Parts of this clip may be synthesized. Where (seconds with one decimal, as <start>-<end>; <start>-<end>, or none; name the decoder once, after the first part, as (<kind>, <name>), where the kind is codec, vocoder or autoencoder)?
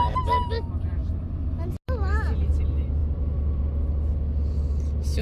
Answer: none